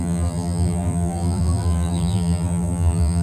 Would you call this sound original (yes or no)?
no